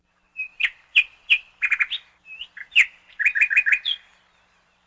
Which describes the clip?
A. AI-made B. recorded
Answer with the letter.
A